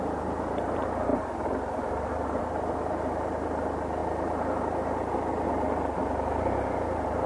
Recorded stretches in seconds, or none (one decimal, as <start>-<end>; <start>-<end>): 0.0-1.1; 2.9-7.3